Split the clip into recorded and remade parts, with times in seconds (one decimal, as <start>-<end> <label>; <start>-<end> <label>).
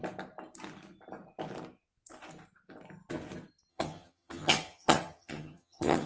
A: 0.0-3.7 recorded; 3.7-6.1 remade